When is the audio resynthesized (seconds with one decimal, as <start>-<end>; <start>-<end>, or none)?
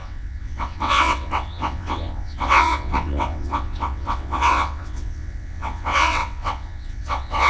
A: 0.0-7.5